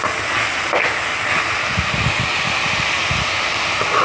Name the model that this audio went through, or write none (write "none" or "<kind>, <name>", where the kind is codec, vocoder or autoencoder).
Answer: none